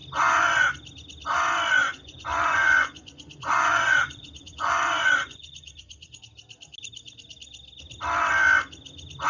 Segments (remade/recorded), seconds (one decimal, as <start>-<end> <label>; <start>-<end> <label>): 0.0-1.8 recorded; 1.8-6.2 remade; 6.2-9.3 recorded